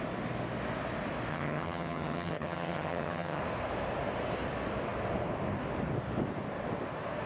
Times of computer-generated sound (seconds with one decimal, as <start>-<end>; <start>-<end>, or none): 1.3-3.4